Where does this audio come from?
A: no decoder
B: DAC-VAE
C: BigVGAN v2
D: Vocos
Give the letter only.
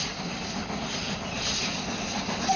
A